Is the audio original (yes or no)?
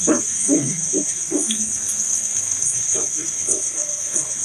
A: no